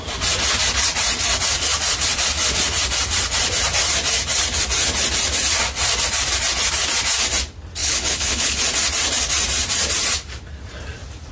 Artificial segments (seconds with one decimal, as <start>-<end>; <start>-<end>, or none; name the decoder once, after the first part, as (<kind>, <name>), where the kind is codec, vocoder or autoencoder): 7.8-8.6 (codec, HILCodec)